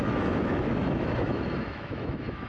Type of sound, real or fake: fake